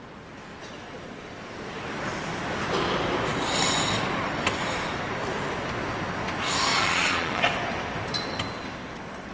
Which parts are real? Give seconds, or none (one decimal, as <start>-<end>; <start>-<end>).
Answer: 0.0-6.7; 7.4-9.3